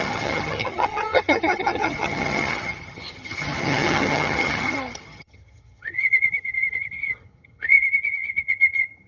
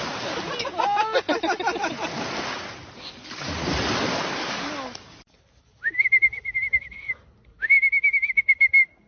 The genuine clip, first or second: second